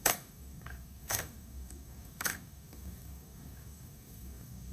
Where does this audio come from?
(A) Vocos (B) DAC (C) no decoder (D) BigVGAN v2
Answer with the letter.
B